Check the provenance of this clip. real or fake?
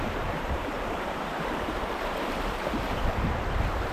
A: fake